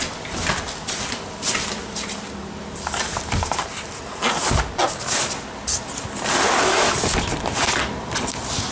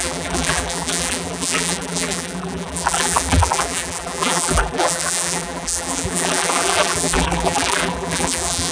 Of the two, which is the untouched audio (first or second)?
first